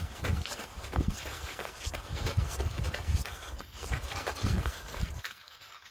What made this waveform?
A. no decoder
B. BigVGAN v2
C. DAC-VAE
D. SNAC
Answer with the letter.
D